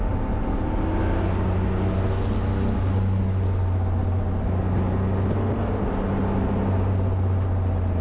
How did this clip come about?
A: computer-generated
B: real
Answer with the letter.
B